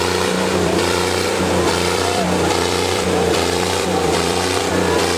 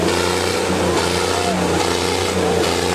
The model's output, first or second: first